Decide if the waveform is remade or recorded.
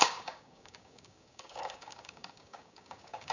remade